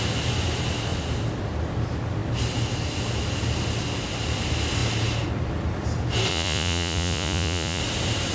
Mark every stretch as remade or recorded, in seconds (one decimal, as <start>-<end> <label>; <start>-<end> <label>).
0.0-6.3 recorded; 6.3-7.8 remade; 7.8-8.3 recorded